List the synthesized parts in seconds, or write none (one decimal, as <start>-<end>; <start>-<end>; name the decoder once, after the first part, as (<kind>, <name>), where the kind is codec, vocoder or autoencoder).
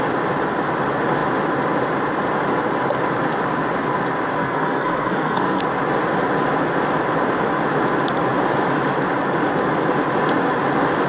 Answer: 4.4-5.6 (codec, SNAC)